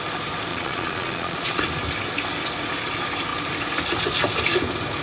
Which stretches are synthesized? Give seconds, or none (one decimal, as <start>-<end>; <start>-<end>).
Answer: 0.5-1.6